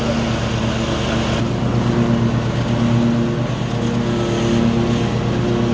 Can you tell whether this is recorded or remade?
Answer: recorded